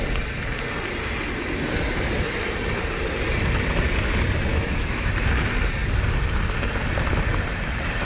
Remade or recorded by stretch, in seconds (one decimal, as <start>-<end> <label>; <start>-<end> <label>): 0.0-4.5 recorded; 4.5-5.1 remade; 5.1-8.0 recorded